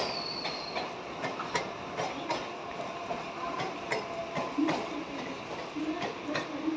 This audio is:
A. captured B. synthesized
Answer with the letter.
A